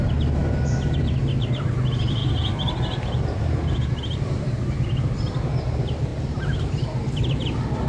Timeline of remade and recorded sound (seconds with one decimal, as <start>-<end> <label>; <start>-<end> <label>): 0.0-2.2 recorded; 2.2-5.4 remade; 5.4-7.9 recorded